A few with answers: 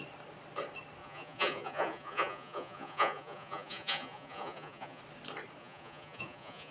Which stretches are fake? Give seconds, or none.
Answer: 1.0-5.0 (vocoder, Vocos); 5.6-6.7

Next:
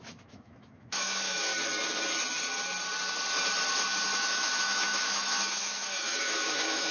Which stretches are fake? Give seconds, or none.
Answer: 0.0-1.5 (autoencoder, DAC-VAE); 4.2-6.9

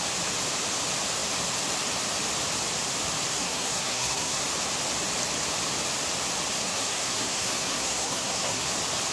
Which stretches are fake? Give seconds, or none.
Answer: 3.3-4.4 (codec, SNAC); 6.6-8.7

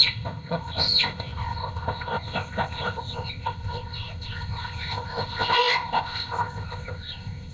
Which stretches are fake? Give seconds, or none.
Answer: 0.0-7.5 (codec, ZipCodec)

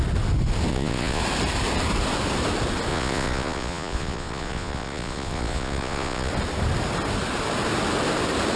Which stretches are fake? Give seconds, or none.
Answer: 0.7-1.2 (vocoder, Vocos); 2.9-6.3